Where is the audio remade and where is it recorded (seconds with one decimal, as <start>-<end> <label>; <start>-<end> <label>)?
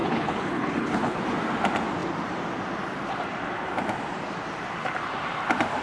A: 0.0-1.2 remade; 1.2-5.8 recorded